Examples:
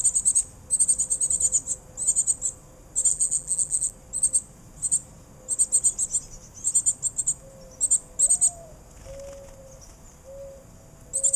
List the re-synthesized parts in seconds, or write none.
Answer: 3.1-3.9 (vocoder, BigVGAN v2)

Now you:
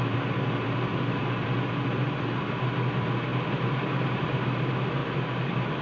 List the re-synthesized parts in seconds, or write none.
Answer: 3.3-4.4 (vocoder, BigVGAN v2); 5.0-5.8

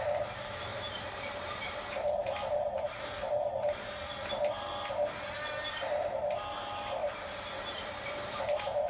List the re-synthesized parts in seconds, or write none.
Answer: 0.7-1.4 (vocoder, BigVGAN v2); 7.0-8.9